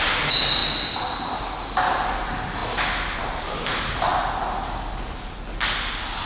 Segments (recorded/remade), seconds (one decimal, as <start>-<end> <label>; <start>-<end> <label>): 0.0-6.3 recorded